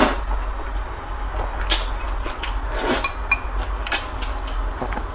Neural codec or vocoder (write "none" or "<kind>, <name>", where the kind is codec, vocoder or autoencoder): none